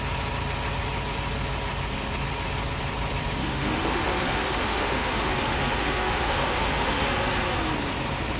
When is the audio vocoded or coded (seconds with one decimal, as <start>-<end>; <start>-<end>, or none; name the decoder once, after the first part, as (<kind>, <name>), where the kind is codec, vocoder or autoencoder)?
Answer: 3.4-7.1 (autoencoder, DAC-VAE)

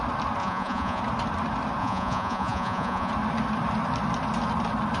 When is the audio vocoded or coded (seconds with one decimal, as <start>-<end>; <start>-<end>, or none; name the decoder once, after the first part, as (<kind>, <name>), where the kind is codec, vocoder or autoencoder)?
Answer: 0.4-1.0 (vocoder, Vocos); 1.8-3.1

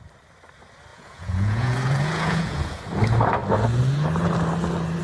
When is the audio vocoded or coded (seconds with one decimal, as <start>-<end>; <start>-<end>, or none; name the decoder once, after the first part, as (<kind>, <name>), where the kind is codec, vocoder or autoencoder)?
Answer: 0.9-2.8 (vocoder, Vocos)

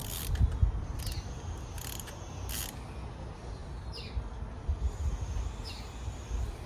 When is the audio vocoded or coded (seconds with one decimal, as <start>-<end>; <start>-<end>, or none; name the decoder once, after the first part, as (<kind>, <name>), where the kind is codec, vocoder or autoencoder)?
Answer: none

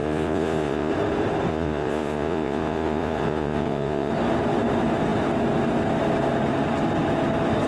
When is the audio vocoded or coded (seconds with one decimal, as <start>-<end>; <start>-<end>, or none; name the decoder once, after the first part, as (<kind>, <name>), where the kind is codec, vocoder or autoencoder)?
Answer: 0.0-0.9 (vocoder, Vocos); 1.5-4.1

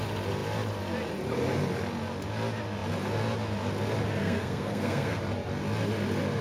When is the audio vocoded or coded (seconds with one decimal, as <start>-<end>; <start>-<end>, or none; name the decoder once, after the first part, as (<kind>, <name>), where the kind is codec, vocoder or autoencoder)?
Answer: 4.2-5.2 (codec, SNAC)

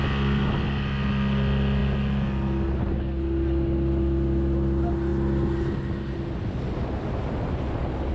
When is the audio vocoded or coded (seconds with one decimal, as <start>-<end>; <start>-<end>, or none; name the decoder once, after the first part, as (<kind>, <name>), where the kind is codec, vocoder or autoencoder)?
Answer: none